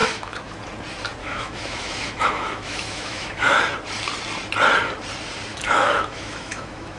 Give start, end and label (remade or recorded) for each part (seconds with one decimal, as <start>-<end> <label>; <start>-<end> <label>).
0.0-0.6 remade; 0.6-1.2 recorded; 1.2-3.6 remade; 3.6-5.5 recorded; 5.5-7.0 remade